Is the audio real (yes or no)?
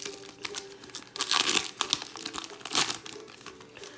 yes